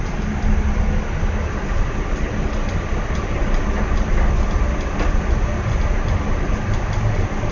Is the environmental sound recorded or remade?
recorded